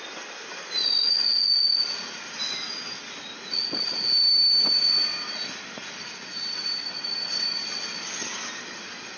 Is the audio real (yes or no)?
yes